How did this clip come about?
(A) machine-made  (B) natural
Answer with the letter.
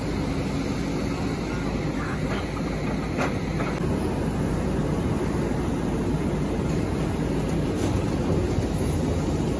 B